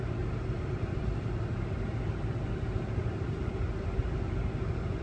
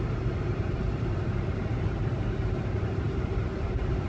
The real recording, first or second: first